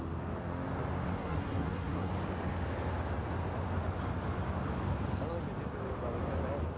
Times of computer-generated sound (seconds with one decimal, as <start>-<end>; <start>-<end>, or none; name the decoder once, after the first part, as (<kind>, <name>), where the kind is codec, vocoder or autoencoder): 1.2-2.1 (codec, SNAC)